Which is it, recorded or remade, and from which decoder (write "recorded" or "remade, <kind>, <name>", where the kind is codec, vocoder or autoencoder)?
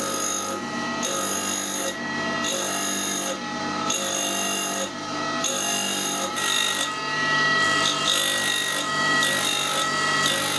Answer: recorded